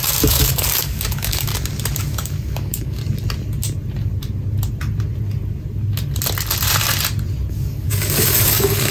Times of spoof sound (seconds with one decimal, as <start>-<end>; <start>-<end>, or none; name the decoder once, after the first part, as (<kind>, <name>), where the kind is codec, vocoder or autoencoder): 0.0-1.5 (codec, DAC); 2.0-3.0; 7.5-8.9